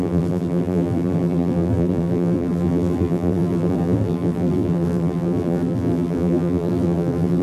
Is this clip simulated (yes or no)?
yes